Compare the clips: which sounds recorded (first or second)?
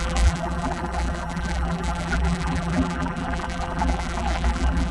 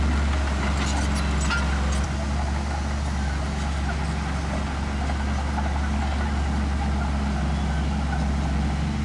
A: second